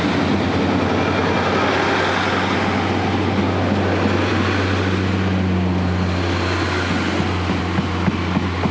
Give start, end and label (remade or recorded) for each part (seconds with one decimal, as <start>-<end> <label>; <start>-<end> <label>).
0.0-8.7 recorded